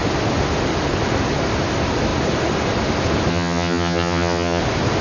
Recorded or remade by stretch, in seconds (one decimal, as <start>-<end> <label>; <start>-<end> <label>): 0.0-3.3 recorded; 3.3-4.6 remade; 4.6-5.0 recorded